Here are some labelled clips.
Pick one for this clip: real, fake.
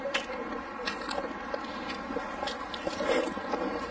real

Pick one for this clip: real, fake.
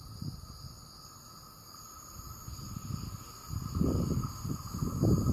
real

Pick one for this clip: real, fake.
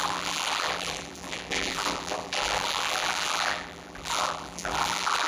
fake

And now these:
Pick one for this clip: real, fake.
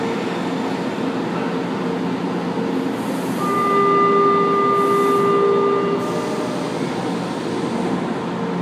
real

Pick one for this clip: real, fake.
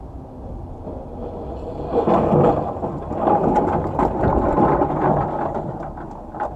real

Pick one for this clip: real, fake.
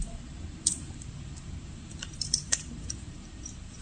fake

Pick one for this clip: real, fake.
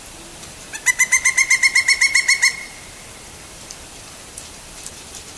fake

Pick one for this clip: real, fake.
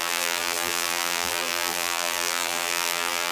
fake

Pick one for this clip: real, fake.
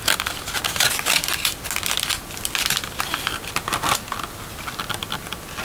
real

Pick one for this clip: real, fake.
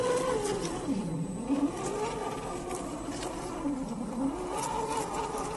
real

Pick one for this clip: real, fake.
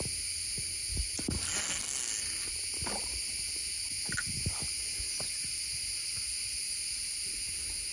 real